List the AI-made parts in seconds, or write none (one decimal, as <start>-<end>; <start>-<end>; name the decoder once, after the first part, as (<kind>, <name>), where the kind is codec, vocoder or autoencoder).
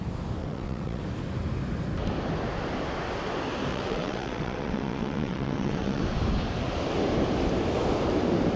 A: 0.4-1.0 (vocoder, WaveNeXt); 3.7-6.0